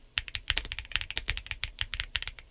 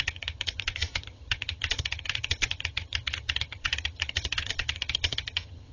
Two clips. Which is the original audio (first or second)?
first